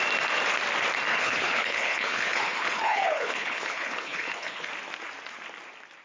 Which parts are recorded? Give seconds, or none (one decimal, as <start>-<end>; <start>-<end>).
0.0-1.1; 4.7-6.0